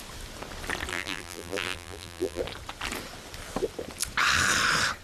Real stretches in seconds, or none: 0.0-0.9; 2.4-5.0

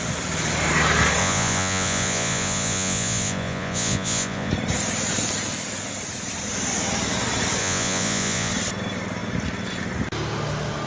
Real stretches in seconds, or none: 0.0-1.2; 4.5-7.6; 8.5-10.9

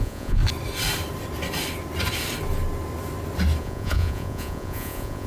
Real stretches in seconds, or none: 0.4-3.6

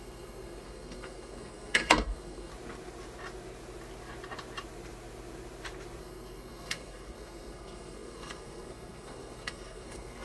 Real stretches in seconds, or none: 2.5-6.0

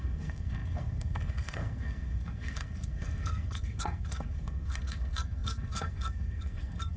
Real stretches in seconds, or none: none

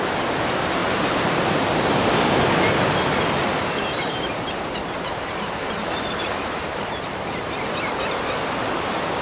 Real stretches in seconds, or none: 0.0-0.8; 2.1-3.5; 8.3-9.2

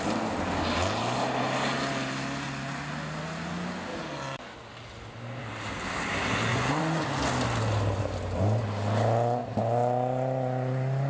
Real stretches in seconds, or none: 0.0-6.5; 7.0-11.1

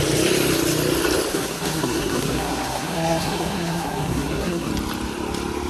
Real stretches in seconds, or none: 0.0-1.3; 4.7-5.7